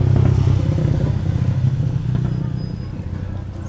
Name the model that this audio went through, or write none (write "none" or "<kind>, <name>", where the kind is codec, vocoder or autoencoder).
none